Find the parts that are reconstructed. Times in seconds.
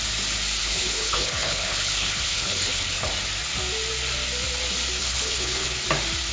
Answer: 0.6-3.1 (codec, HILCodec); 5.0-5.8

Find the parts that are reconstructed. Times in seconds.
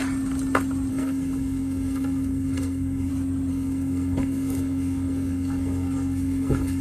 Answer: 0.9-3.1 (codec, SNAC); 3.5-6.8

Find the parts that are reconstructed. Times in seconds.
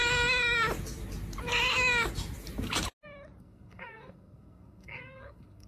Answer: 3.4-5.7 (codec, SNAC)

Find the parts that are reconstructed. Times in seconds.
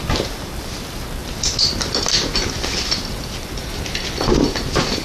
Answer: none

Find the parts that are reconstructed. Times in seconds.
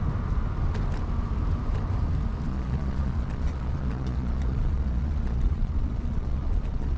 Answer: 2.5-7.0 (vocoder, Vocos)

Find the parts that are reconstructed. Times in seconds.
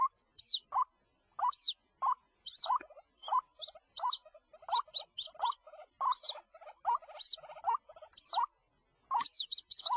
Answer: none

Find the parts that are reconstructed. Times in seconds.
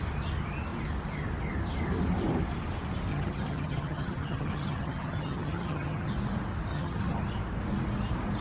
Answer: 3.1-6.1 (vocoder, HiFi-GAN); 6.7-7.2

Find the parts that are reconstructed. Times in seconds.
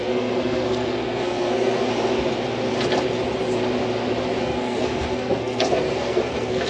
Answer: 0.0-1.9 (codec, SNAC); 4.4-6.7